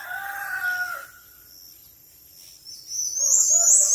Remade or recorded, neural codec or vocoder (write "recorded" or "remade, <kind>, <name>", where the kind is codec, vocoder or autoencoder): recorded